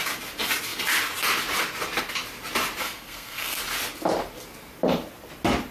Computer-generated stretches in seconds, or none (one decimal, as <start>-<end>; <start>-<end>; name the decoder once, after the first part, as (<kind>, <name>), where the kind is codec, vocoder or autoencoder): 2.8-3.6 (codec, SNAC)